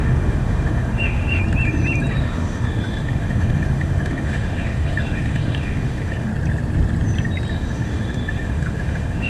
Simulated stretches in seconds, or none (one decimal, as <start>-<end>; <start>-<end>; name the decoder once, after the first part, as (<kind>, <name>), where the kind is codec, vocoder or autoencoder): 0.0-1.4 (autoencoder, DAC-VAE); 2.2-6.3; 7.5-9.3